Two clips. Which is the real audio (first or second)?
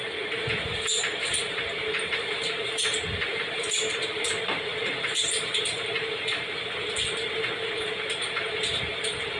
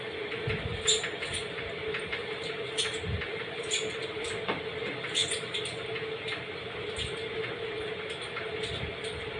second